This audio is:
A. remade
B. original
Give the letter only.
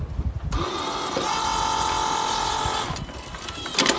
B